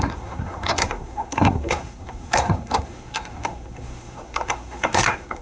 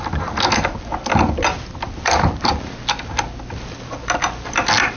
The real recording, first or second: second